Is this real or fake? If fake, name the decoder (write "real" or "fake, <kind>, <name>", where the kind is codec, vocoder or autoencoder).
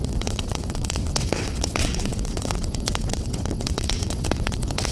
fake, vocoder, WaveNeXt